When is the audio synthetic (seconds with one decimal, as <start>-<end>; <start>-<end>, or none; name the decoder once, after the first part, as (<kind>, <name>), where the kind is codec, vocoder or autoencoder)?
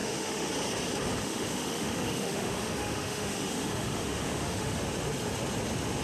0.0-0.5 (autoencoder, DAC-VAE); 1.2-4.8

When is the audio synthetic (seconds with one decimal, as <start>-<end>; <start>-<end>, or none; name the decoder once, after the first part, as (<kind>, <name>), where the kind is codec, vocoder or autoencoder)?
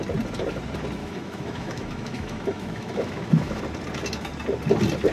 1.0-3.6 (autoencoder, DAC-VAE)